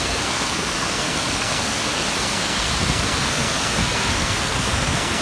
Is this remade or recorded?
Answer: remade